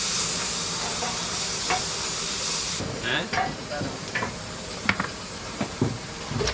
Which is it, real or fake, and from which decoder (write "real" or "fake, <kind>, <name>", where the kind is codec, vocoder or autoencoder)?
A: fake, vocoder, BigVGAN v2